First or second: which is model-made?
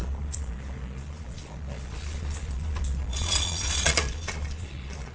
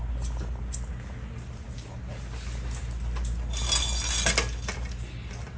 first